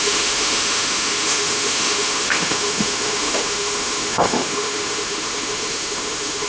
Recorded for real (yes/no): no